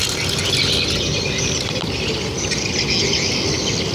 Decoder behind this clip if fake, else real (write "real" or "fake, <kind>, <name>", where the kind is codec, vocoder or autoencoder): real